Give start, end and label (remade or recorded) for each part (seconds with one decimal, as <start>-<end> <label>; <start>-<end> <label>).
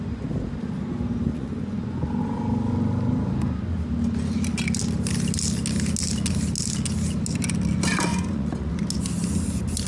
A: 0.0-1.3 recorded; 1.3-2.2 remade; 2.2-8.1 recorded; 8.1-8.7 remade; 8.7-9.9 recorded